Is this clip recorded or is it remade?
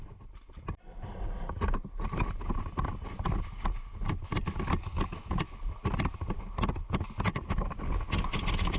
recorded